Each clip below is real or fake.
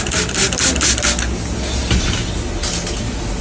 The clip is real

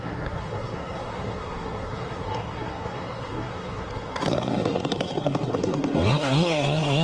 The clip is fake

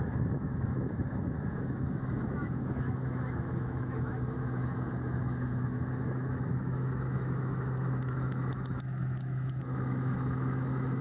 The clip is fake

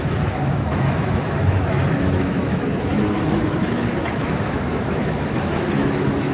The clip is fake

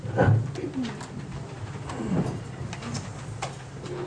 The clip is fake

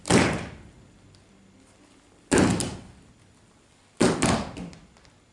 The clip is real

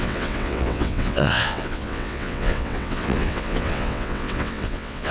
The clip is fake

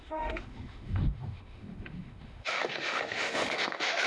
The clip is fake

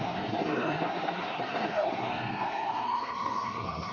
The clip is fake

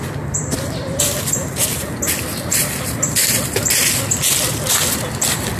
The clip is fake